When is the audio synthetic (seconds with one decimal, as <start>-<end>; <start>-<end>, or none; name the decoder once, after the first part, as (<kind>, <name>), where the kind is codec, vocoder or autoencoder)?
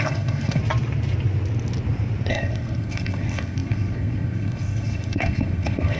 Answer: 0.0-0.6 (codec, SNAC); 2.3-6.0